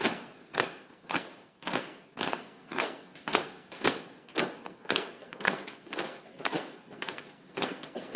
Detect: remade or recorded remade